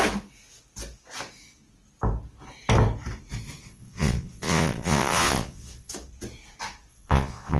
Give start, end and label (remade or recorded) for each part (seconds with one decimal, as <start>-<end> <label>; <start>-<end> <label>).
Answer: 0.0-3.6 recorded; 3.6-5.9 remade; 5.9-6.9 recorded; 6.9-7.6 remade